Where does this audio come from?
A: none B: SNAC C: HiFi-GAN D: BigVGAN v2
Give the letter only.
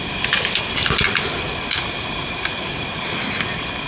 A